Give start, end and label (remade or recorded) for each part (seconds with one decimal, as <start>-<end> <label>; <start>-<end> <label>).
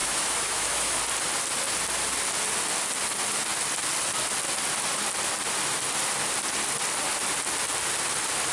0.0-1.0 remade; 1.0-8.5 recorded